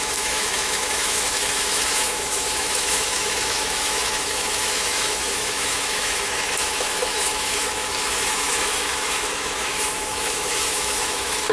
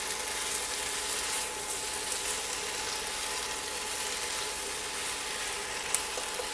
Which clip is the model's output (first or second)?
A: first